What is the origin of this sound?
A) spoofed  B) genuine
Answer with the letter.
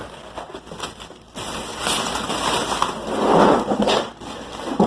B